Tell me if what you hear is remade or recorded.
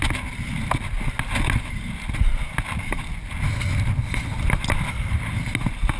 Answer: recorded